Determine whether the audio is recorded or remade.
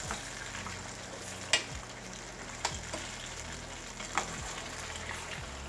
recorded